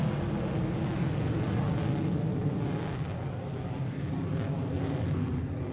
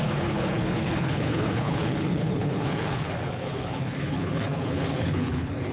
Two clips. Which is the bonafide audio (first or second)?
first